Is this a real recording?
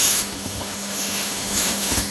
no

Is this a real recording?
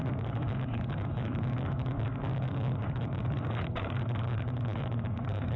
no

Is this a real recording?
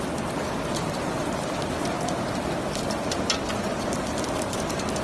yes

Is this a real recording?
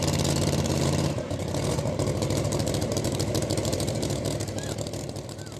no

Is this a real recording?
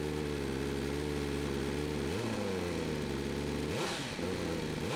yes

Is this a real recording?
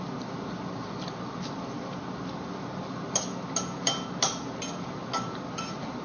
yes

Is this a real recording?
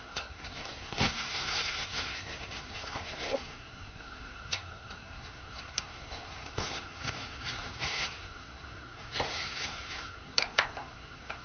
no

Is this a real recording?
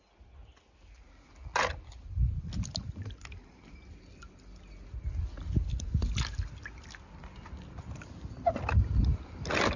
yes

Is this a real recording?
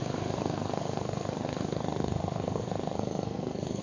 no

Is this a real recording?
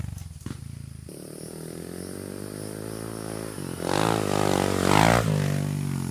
yes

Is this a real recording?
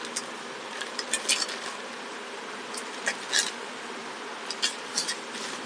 yes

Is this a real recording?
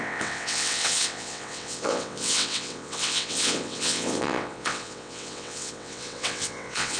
no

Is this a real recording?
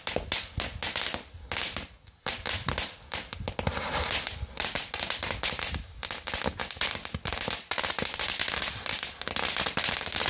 yes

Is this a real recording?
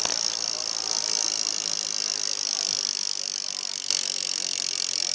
yes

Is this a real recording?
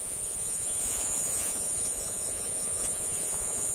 no